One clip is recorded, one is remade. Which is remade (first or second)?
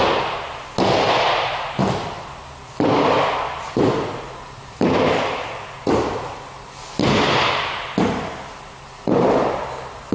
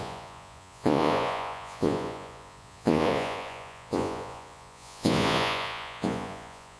second